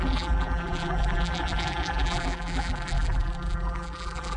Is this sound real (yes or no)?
no